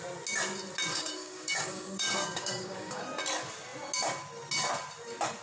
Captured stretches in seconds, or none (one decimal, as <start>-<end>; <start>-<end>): 0.0-0.9; 3.0-5.4